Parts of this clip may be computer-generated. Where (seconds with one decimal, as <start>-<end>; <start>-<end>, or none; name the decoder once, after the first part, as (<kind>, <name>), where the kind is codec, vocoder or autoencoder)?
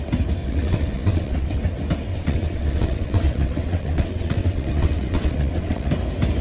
0.4-1.6 (vocoder, WaveNeXt); 2.1-5.9